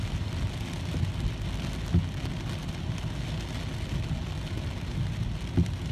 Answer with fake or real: real